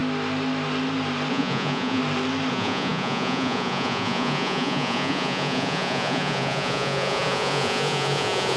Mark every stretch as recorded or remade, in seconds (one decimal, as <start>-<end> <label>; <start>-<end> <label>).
0.0-1.3 recorded; 1.3-2.0 remade; 2.0-2.5 recorded; 2.5-8.6 remade